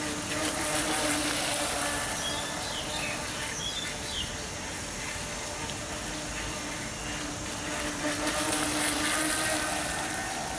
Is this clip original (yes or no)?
yes